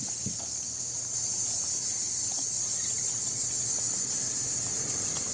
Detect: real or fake real